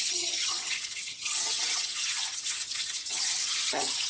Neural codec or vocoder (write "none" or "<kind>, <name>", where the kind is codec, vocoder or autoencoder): vocoder, HiFi-GAN